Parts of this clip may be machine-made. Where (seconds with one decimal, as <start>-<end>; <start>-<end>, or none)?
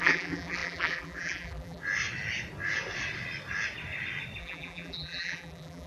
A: 0.0-1.8; 4.4-5.9